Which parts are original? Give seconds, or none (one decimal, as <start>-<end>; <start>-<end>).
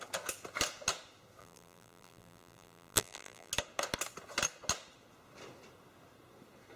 0.0-1.4; 3.5-6.8